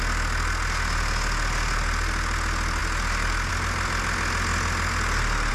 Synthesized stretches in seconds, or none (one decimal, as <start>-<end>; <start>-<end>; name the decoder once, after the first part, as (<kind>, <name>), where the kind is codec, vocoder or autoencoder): none